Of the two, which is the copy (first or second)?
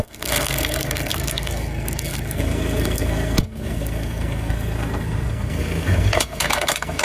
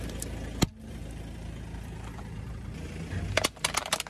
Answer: first